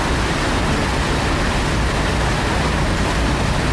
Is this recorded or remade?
recorded